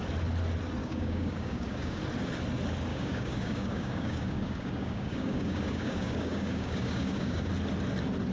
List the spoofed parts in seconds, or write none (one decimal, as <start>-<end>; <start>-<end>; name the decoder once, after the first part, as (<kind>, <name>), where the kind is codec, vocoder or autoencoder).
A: 0.8-2.0 (codec, DAC); 2.9-7.5